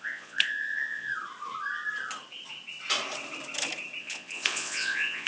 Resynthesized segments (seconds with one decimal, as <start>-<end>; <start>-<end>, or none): 0.0-1.1; 4.0-5.3